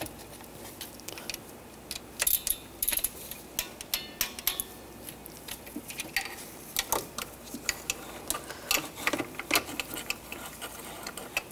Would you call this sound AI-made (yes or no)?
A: no